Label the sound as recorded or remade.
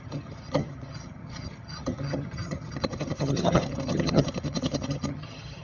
remade